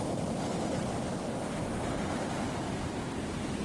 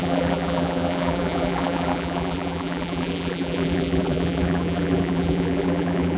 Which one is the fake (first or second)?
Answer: second